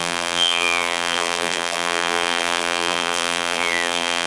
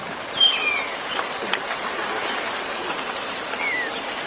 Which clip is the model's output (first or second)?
first